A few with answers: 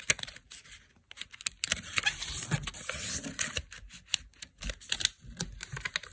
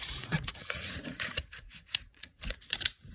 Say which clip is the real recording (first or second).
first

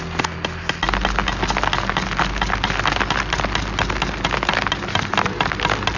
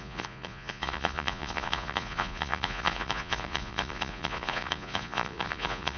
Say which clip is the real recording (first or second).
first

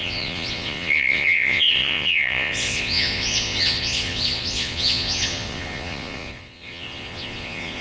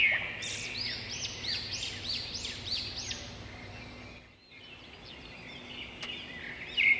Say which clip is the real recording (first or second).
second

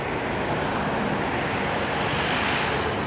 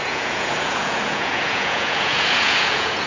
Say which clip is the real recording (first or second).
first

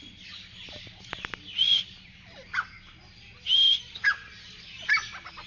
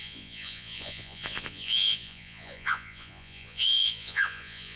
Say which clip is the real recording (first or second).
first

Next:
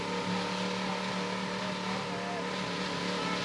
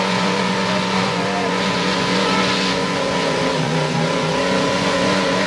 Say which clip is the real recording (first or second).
first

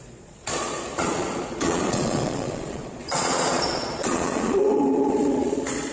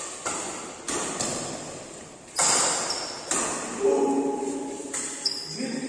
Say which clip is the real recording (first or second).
second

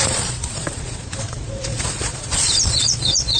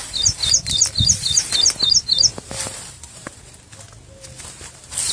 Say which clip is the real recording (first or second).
second